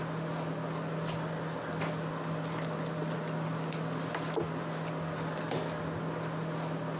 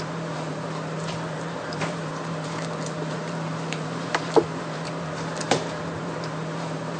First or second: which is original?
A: first